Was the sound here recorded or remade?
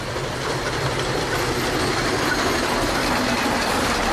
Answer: recorded